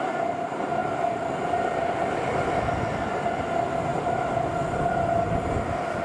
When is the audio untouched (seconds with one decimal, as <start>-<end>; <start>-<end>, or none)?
0.0-0.8; 1.8-3.9; 4.6-6.0